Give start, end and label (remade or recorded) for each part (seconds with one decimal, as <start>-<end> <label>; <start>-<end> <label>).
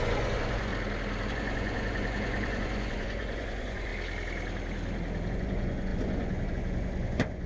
0.0-0.7 remade; 0.7-1.3 recorded; 1.3-3.9 remade; 3.9-5.3 recorded; 5.3-7.5 remade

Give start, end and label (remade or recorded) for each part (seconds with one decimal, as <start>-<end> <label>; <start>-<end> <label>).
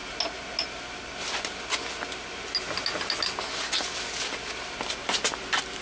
0.0-5.8 recorded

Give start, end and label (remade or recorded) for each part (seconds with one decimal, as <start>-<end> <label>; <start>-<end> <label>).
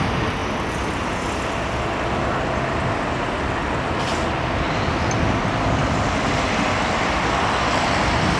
0.0-8.4 recorded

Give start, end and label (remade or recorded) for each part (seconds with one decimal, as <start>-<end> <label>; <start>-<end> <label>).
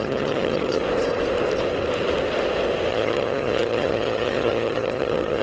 0.0-0.8 remade; 0.8-2.9 recorded; 2.9-5.4 remade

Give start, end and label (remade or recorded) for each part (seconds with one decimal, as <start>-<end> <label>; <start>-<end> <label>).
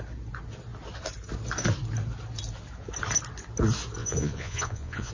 0.0-4.0 recorded; 4.0-5.1 remade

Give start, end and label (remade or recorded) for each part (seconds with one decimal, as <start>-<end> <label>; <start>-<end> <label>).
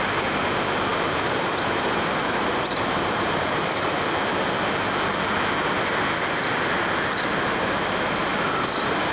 0.0-0.9 recorded; 0.9-3.9 remade; 3.9-8.3 recorded; 8.3-9.1 remade